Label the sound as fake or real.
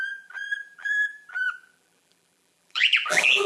fake